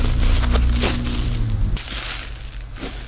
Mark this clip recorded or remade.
recorded